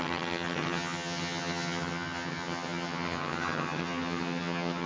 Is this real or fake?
fake